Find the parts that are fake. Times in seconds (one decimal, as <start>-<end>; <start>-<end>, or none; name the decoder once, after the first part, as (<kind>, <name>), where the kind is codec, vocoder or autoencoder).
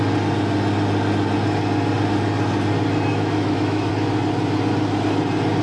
3.1-3.9 (autoencoder, DAC-VAE)